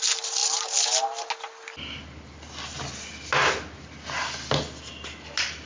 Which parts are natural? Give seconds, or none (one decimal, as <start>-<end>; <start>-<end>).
0.0-5.7